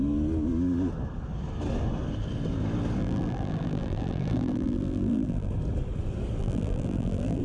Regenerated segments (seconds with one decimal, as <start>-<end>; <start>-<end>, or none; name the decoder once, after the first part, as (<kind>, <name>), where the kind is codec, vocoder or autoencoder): 3.0-5.5 (vocoder, BigVGAN v2); 6.4-7.4